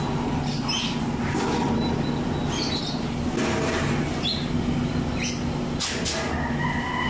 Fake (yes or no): no